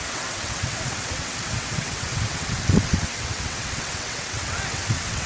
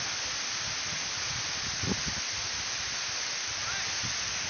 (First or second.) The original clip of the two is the second